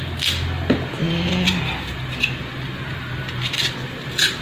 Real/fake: real